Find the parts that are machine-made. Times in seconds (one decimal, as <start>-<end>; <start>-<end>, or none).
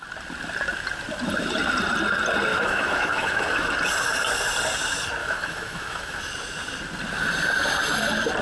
2.5-3.7; 5.2-6.3